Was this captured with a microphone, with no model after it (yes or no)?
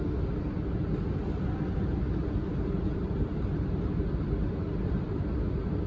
yes